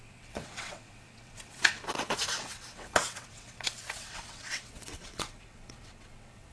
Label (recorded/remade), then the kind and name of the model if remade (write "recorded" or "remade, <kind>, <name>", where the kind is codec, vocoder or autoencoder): remade, vocoder, WaveNeXt